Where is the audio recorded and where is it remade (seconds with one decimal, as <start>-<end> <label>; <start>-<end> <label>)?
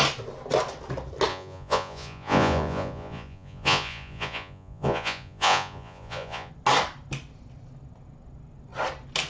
0.0-1.3 recorded; 1.3-6.5 remade; 6.5-9.3 recorded